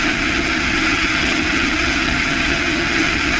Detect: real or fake fake